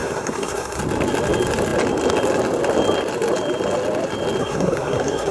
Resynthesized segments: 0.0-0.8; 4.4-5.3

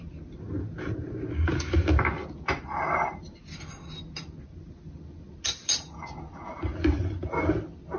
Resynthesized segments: none

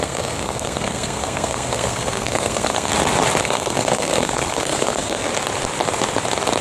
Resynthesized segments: 0.0-2.9; 3.4-5.3

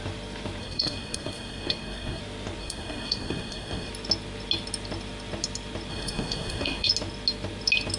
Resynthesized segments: 0.6-2.2; 2.6-3.9; 5.9-6.9